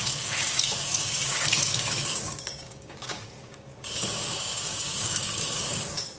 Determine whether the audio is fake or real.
fake